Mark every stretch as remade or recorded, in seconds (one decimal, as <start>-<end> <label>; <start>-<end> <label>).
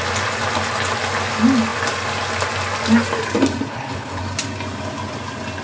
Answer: 0.0-3.7 recorded; 3.7-4.2 remade; 4.2-5.6 recorded